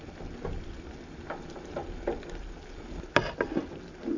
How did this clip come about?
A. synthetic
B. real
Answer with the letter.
B